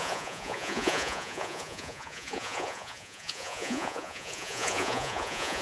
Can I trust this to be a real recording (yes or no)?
no